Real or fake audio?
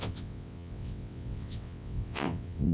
fake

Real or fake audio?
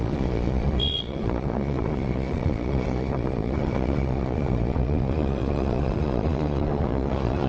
fake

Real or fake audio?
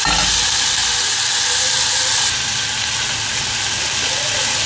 real